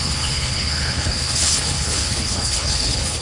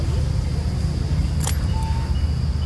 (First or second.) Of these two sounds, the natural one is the second